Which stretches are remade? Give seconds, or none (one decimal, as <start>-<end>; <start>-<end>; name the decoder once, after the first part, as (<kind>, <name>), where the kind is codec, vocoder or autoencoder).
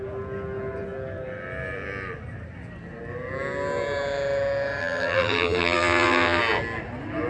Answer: 4.8-6.4 (vocoder, BigVGAN v2)